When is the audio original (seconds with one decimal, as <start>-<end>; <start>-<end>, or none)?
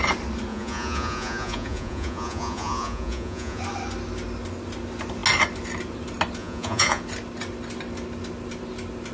0.0-0.5; 3.6-6.4; 7.0-9.1